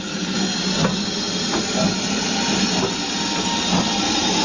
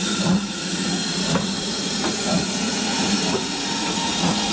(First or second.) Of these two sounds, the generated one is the second